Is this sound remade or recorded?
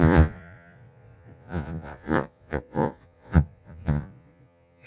remade